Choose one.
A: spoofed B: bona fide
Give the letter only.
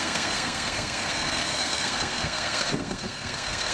A